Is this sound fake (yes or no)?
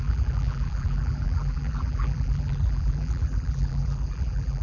yes